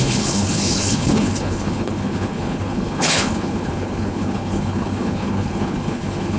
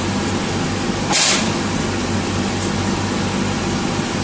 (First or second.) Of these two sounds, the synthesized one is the first